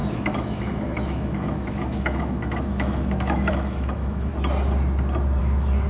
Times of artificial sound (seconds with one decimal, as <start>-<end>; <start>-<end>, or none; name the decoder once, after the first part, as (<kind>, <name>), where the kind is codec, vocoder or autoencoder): 0.0-4.3 (autoencoder, DAC-VAE); 5.4-5.9